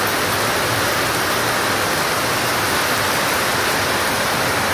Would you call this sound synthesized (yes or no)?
no